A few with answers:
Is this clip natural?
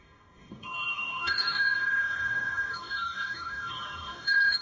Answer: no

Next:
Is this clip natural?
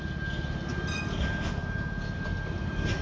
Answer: yes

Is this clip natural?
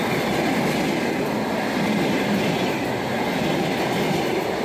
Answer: yes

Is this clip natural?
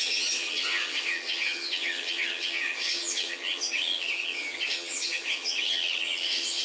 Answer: no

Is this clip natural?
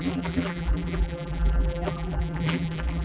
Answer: no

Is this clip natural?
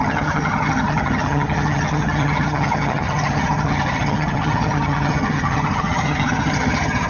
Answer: no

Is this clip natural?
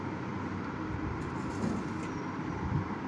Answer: yes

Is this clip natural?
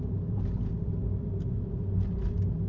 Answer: yes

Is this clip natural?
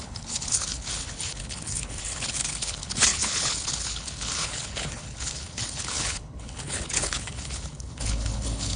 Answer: no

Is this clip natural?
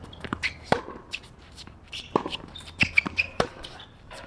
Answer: no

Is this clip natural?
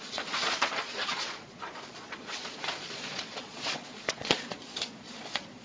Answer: no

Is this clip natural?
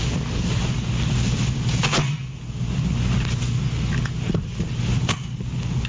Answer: yes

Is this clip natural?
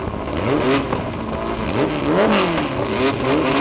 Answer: yes